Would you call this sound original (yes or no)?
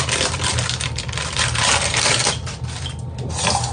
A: yes